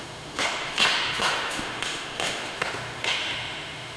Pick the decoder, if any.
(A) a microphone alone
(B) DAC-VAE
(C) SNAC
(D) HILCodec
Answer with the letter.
B